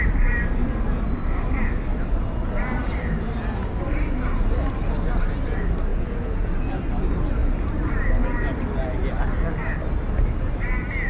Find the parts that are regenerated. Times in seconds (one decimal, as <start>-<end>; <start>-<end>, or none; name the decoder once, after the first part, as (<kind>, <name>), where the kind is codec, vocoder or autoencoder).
5.9-6.5 (vocoder, Vocos)